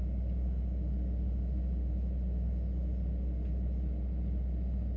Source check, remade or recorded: recorded